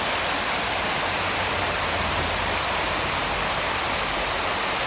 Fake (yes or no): no